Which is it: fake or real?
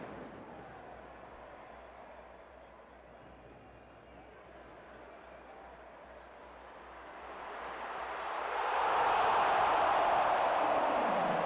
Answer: real